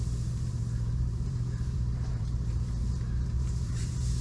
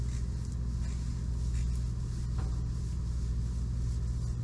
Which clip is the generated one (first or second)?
first